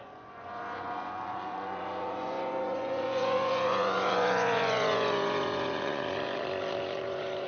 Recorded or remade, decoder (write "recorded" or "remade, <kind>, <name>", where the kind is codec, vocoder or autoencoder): remade, vocoder, Vocos